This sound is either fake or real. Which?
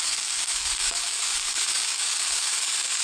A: fake